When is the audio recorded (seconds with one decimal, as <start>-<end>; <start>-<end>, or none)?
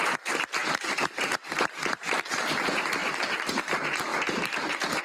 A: 0.0-0.6; 2.1-4.1